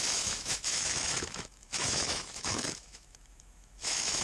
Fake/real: fake